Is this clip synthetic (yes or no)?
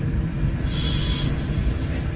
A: no